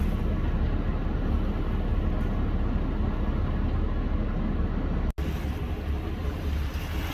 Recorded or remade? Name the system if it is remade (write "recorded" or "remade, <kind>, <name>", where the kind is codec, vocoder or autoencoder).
recorded